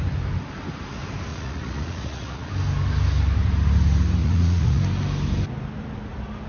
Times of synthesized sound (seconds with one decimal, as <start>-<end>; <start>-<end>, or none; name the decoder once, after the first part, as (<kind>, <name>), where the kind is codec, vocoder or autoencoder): 1.3-2.5 (vocoder, Vocos); 4.2-4.8